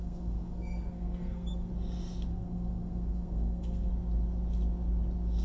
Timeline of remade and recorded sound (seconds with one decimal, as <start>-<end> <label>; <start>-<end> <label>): 0.0-1.7 remade; 1.7-2.3 recorded; 2.3-3.9 remade; 3.9-5.4 recorded